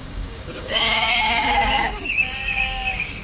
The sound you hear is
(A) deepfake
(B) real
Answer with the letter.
A